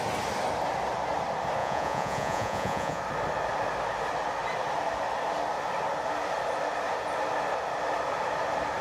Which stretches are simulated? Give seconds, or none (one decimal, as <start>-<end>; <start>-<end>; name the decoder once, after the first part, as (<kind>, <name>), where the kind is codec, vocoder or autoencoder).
1.6-3.0 (vocoder, Vocos)